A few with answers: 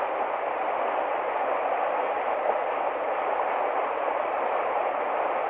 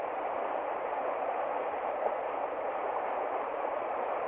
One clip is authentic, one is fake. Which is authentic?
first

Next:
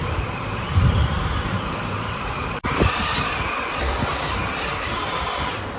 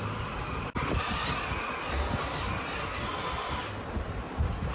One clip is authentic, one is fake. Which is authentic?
second